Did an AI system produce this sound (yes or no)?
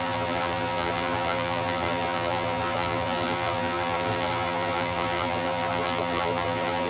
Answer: yes